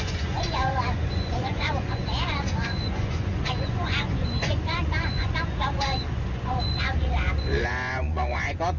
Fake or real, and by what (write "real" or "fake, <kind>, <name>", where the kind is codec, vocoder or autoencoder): fake, vocoder, Vocos